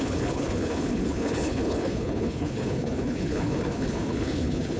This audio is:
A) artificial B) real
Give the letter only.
A